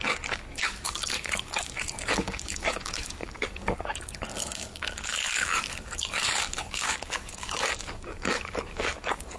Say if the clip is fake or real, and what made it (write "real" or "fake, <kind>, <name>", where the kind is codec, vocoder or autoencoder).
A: fake, codec, DAC